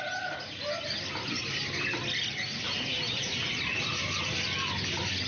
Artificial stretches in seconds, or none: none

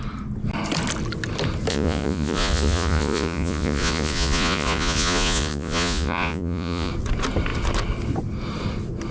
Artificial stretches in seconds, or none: 1.7-6.9 (vocoder, Vocos)